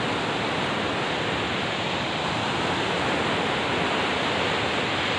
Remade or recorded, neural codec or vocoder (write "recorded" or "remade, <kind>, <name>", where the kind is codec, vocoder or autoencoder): recorded